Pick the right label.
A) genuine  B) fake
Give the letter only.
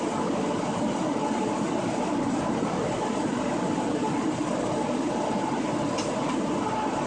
A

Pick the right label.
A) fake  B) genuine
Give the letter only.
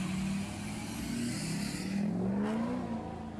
B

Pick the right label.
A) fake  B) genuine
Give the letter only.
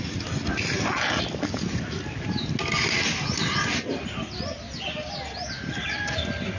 B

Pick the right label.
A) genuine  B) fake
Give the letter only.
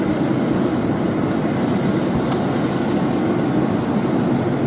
A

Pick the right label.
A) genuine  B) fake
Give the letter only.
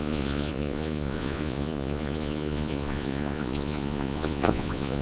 B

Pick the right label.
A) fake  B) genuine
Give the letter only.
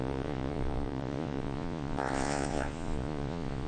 A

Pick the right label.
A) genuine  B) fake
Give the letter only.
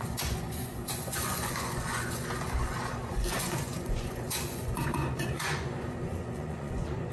B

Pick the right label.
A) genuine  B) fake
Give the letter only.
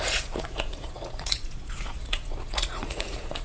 B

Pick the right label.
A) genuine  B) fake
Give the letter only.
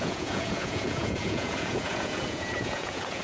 B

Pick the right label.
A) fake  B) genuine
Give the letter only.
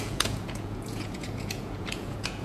A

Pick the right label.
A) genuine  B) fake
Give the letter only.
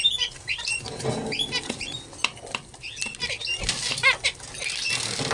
A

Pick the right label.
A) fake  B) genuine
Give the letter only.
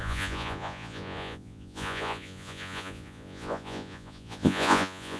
A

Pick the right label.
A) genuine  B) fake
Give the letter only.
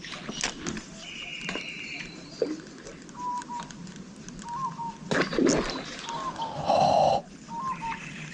A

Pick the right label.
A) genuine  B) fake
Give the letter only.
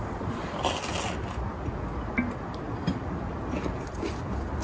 A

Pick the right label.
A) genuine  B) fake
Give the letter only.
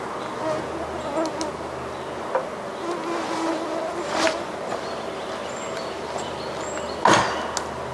A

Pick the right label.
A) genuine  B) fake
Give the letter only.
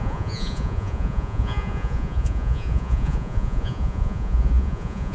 B